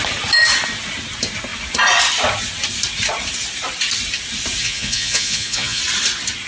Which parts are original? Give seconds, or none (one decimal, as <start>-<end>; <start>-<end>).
0.0-4.6; 5.8-6.5

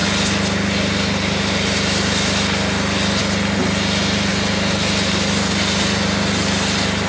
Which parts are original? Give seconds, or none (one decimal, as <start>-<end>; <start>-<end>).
0.0-7.1

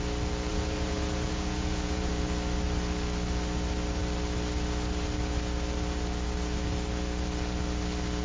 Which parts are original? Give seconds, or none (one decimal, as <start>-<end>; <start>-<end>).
0.0-0.5; 2.1-8.2

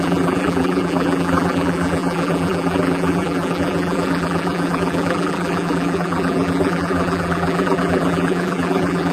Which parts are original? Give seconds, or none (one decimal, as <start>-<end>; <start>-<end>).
none

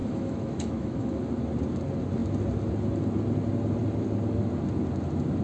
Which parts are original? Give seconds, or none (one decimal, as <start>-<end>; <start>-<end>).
1.2-5.4

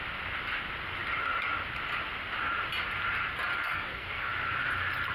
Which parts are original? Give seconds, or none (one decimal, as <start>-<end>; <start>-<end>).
0.0-3.5; 4.3-5.1

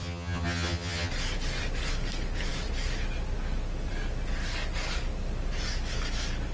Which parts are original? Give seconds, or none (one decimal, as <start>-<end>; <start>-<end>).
1.1-6.5